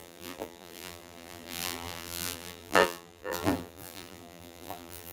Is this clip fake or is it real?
fake